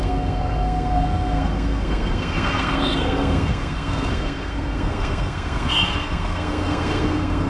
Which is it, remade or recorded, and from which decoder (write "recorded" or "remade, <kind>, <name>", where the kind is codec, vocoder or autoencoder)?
remade, codec, SNAC